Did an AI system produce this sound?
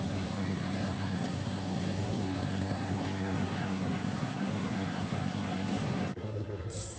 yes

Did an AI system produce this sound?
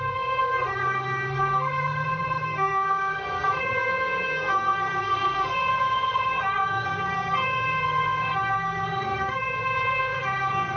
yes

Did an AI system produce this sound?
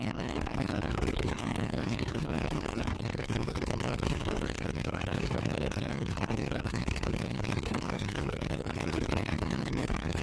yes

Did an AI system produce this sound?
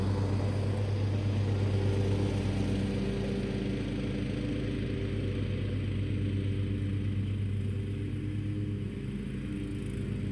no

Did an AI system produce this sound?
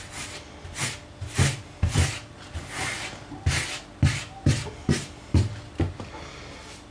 no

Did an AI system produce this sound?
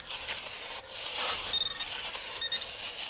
no